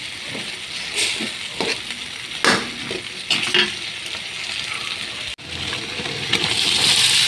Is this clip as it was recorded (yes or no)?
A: yes